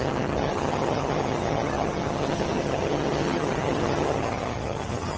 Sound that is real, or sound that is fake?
fake